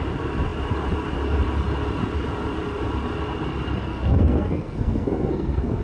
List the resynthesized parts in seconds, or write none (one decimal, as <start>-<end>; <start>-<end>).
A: 3.8-5.8